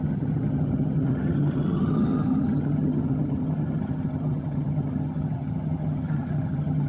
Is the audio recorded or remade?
remade